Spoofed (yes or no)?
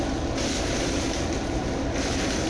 no